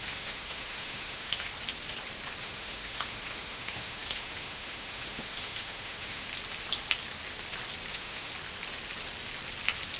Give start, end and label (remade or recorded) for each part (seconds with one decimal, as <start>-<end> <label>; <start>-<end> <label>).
0.0-1.5 remade; 1.5-2.4 recorded; 2.4-6.3 remade; 6.3-7.9 recorded; 7.9-8.3 remade; 8.3-10.0 recorded